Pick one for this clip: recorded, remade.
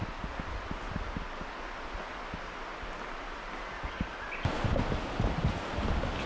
recorded